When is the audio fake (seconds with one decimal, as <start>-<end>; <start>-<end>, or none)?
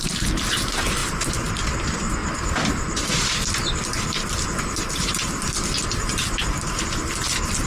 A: 2.2-6.8